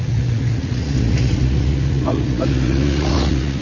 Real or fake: fake